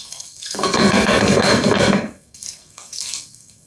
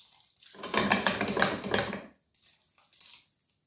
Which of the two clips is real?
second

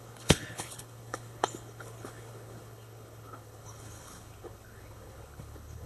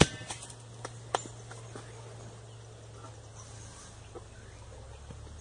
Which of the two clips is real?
second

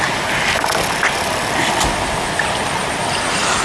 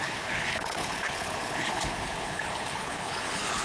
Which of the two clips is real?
first